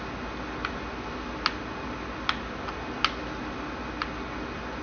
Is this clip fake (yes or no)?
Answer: no